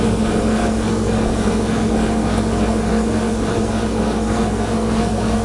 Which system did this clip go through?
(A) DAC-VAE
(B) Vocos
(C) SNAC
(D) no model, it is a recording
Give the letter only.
C